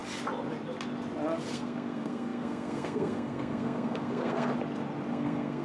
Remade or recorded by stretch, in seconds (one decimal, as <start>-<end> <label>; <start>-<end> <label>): 0.0-1.5 recorded; 1.5-4.5 remade; 4.5-5.1 recorded; 5.1-5.6 remade